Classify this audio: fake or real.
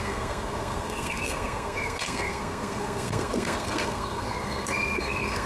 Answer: fake